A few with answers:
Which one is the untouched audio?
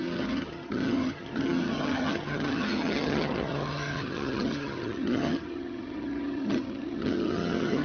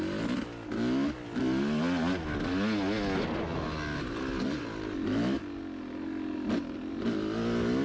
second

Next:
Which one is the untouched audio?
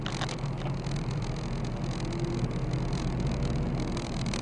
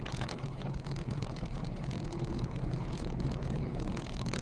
first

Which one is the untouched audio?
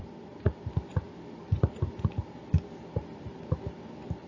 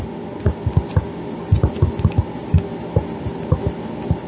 second